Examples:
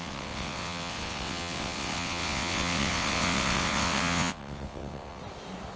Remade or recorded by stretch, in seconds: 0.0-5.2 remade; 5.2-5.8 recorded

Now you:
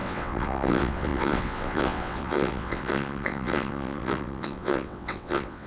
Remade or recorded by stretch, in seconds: 0.0-5.7 remade

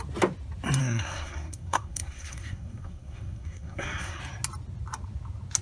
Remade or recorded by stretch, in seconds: 0.0-0.8 recorded; 0.8-4.2 remade; 4.2-5.6 recorded

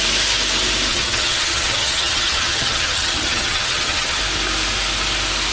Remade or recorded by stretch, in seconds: 0.0-0.9 recorded; 0.9-4.2 remade; 4.2-5.5 recorded